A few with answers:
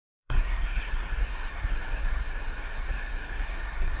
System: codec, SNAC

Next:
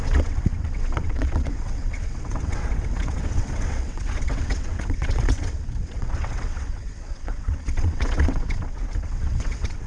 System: vocoder, WaveNeXt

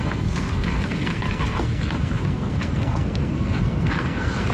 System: codec, SNAC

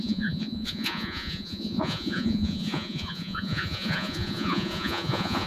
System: vocoder, Vocos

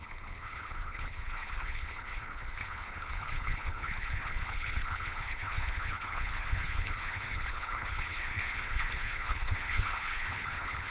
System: codec, HILCodec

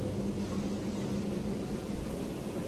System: none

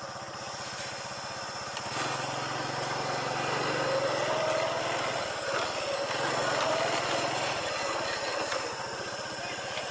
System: none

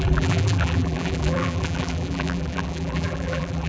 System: vocoder, BigVGAN v2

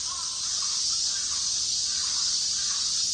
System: none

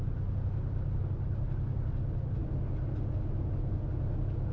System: none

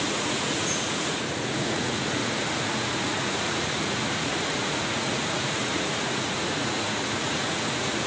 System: vocoder, Vocos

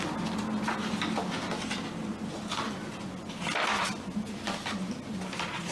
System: none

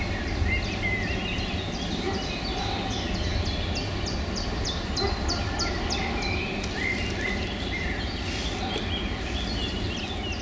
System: none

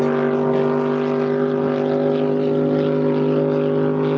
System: none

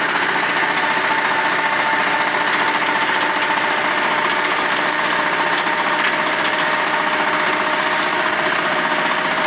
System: none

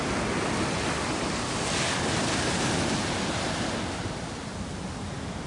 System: none